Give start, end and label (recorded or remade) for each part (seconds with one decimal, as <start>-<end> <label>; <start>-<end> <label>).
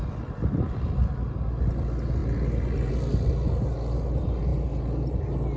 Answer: 0.0-5.6 recorded